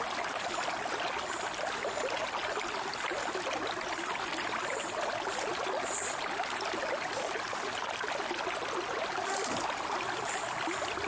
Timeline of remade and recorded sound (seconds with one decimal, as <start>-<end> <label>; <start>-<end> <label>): 0.0-2.4 recorded; 2.4-7.2 remade; 7.2-11.1 recorded

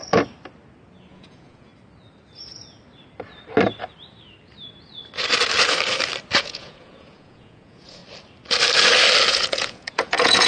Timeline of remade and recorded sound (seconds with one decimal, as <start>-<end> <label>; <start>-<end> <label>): 0.0-1.1 recorded; 1.1-1.7 remade; 1.7-6.4 recorded; 6.4-8.0 remade; 8.0-9.3 recorded; 9.3-10.5 remade

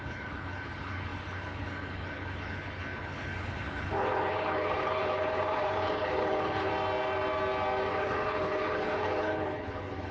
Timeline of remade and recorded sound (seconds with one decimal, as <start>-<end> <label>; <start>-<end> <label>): 0.0-6.7 remade; 6.7-7.9 recorded; 7.9-10.1 remade

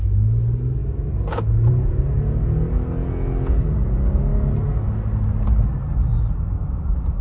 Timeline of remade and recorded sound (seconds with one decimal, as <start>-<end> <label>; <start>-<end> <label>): 0.0-7.2 recorded

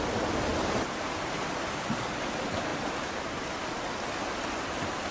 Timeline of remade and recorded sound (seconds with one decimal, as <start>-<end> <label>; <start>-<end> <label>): 0.0-0.5 recorded; 0.5-2.0 remade; 2.0-2.7 recorded; 2.7-3.5 remade; 3.5-5.1 recorded